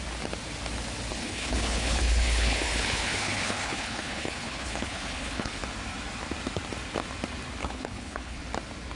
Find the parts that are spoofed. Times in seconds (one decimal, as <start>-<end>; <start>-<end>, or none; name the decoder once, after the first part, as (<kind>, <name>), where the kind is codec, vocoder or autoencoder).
1.1-5.6 (codec, HILCodec); 7.6-8.4